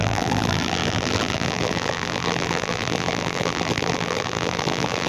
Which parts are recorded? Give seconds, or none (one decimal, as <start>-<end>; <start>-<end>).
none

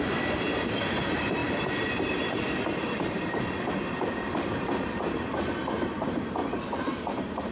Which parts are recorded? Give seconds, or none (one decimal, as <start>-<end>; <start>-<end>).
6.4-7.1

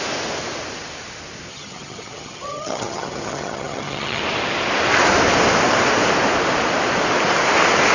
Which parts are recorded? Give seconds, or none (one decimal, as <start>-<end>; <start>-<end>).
0.0-1.5; 4.2-7.9

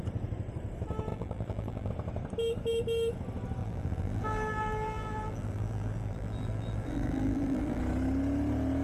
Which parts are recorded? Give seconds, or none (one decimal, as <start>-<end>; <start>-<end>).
0.0-1.1; 1.9-3.6; 7.8-8.8

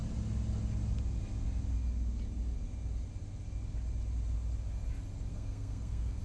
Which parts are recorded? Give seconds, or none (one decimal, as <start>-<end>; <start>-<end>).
0.0-5.3

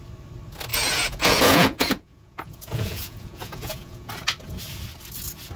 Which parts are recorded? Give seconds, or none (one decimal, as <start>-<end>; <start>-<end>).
0.0-0.7; 4.1-5.6